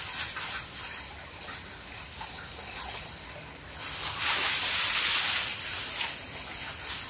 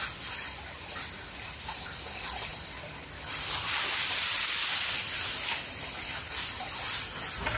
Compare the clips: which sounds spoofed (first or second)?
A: second